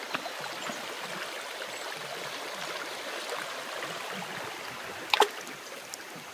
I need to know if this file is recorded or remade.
recorded